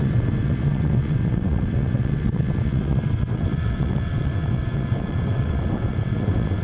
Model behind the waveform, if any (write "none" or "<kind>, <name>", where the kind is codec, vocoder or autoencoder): vocoder, WaveNeXt